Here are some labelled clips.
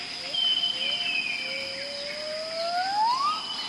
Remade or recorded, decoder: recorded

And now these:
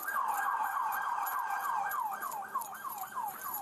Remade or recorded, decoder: recorded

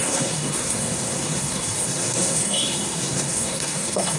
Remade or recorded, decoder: remade, codec, SNAC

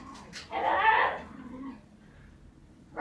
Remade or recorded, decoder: recorded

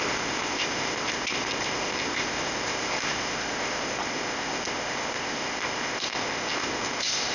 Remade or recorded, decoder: remade, codec, ZipCodec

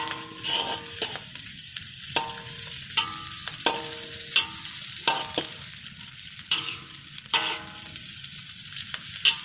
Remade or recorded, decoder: recorded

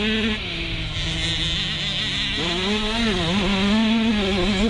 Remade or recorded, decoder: recorded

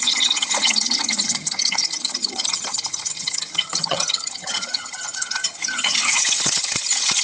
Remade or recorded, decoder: remade, vocoder, HiFi-GAN